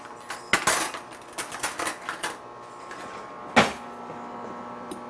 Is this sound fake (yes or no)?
no